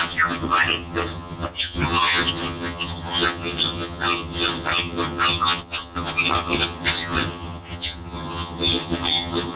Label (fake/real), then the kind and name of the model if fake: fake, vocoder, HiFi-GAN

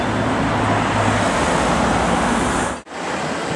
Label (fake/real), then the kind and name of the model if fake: real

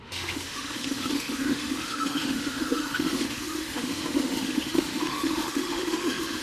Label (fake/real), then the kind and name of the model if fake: fake, autoencoder, DAC-VAE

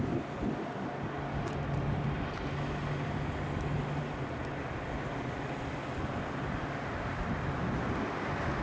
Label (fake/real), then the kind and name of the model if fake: real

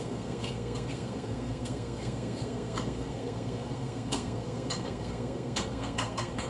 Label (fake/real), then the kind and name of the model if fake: fake, codec, SNAC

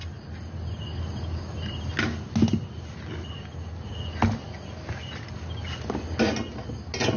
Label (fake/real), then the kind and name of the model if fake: real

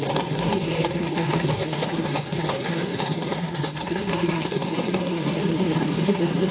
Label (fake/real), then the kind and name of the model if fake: fake, codec, SNAC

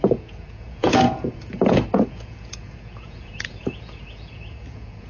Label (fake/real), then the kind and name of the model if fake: fake, vocoder, Vocos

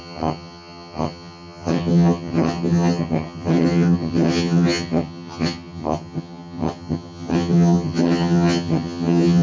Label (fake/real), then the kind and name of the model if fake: fake, vocoder, HiFi-GAN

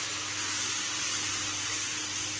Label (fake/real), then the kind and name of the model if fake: real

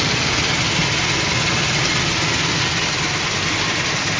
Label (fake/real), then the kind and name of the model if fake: real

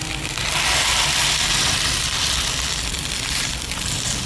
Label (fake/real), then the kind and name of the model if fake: real